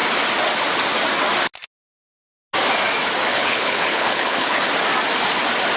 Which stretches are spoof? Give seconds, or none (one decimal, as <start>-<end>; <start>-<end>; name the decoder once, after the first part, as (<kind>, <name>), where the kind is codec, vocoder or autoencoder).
3.3-4.6 (codec, HILCodec)